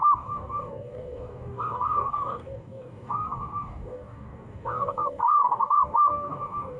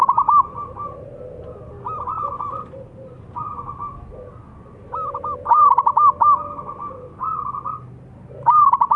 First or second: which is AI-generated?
first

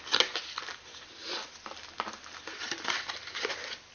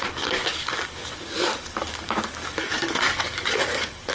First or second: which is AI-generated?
second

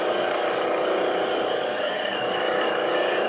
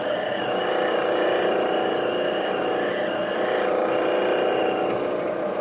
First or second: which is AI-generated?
first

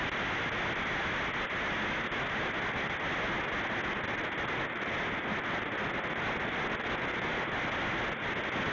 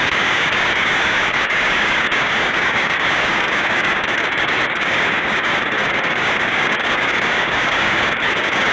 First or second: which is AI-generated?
second